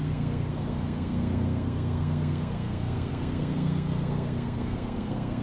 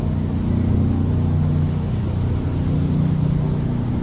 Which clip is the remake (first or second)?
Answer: first